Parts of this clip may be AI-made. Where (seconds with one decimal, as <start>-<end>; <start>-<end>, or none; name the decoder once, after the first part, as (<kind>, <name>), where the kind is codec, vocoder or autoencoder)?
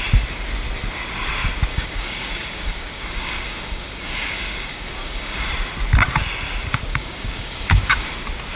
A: 1.7-5.5 (codec, DAC); 6.9-8.1